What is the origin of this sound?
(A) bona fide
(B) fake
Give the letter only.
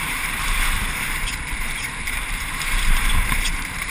B